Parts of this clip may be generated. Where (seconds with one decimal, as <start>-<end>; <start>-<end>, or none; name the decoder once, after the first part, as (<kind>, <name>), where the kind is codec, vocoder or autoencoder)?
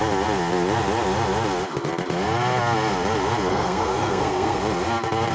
3.5-4.6 (codec, SNAC)